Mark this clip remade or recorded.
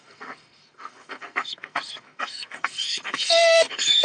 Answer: remade